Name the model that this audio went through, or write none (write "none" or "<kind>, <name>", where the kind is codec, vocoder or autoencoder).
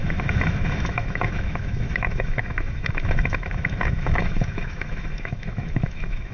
autoencoder, DAC-VAE